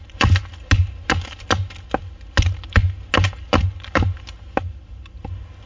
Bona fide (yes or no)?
yes